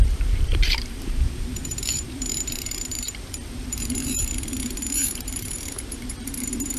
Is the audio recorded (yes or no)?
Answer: no